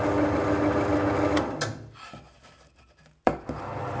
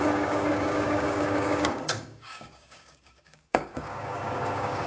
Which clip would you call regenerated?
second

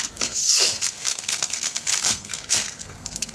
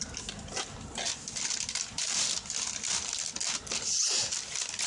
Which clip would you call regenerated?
first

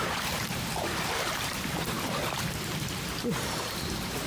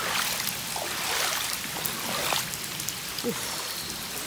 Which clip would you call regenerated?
first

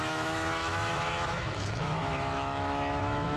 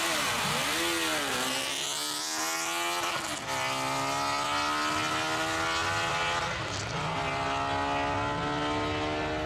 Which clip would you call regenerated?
first